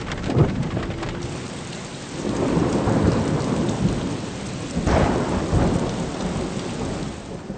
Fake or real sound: real